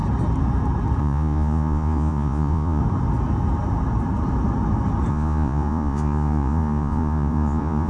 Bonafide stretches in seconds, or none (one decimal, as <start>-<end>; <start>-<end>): 0.0-1.0; 2.8-5.1